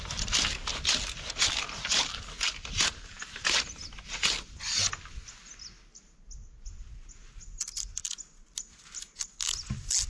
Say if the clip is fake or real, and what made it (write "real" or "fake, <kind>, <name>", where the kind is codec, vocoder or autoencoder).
real